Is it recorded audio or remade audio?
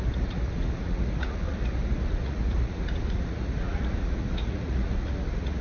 remade